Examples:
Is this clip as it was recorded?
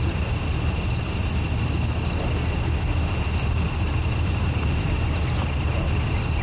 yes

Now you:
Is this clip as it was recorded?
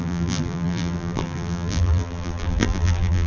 no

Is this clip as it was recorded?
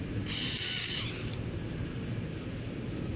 no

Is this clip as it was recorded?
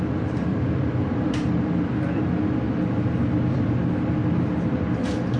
no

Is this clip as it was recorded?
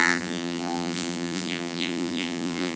no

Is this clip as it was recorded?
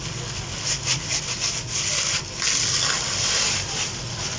yes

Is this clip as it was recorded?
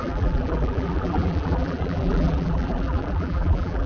no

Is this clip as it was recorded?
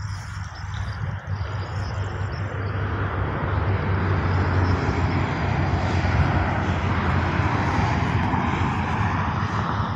yes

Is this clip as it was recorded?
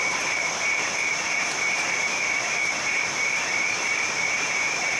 no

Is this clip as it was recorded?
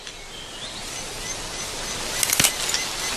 yes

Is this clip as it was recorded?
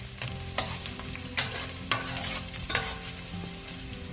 yes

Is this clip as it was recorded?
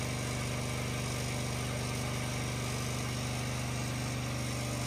yes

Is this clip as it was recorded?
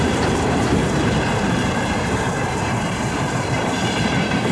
no